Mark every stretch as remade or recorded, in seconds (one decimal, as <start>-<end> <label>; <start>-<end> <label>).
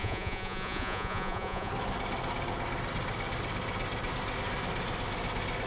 0.0-1.7 remade; 1.7-5.7 recorded